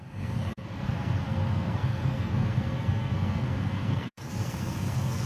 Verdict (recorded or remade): remade